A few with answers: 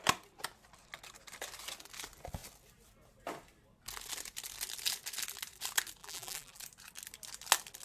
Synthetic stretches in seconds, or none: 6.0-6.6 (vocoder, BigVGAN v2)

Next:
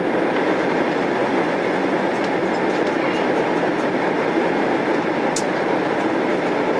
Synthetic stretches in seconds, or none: 1.2-2.2 (vocoder, Vocos)

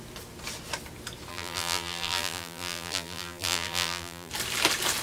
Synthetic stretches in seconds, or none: 1.3-4.3 (vocoder, BigVGAN v2)